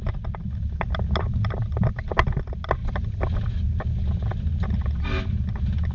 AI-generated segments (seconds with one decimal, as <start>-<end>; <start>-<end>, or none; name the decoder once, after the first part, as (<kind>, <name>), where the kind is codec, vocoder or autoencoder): none

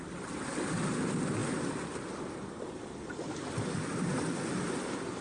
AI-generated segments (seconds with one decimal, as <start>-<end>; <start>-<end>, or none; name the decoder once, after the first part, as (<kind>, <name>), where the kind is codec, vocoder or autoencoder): none

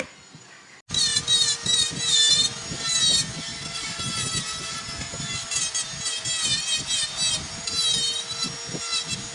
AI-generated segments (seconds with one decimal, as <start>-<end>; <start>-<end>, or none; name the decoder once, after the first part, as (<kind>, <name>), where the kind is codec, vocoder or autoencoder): none

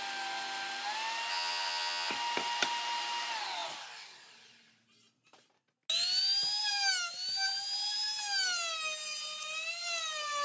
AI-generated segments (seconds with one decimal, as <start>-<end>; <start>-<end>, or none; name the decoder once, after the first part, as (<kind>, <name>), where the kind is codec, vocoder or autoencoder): 1.3-2.1 (vocoder, HiFi-GAN)

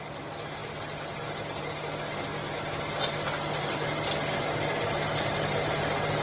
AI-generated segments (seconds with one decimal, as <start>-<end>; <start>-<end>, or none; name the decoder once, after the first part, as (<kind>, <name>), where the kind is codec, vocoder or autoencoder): none